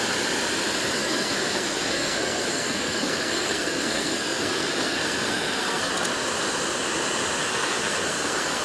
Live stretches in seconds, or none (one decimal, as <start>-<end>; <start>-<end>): 0.0-1.0; 5.9-7.4